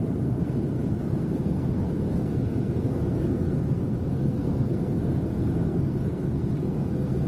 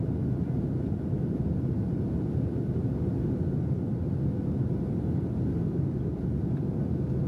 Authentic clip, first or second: second